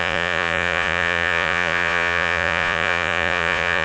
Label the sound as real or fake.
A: fake